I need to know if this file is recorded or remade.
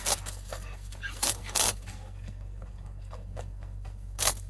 remade